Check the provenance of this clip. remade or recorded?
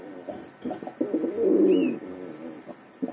recorded